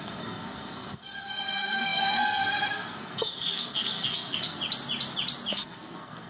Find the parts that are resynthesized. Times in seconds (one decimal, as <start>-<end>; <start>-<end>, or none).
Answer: 0.0-4.6; 5.5-6.3